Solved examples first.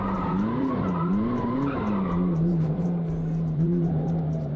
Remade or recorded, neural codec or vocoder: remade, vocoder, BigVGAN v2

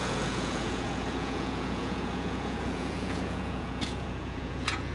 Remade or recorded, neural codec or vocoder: remade, vocoder, Vocos